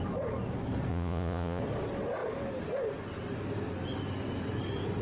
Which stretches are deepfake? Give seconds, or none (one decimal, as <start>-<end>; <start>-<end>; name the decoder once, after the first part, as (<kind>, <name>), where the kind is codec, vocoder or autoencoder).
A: 0.9-1.6 (vocoder, Vocos)